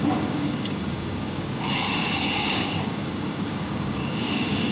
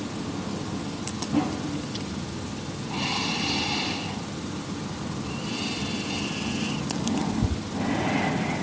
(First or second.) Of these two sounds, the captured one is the second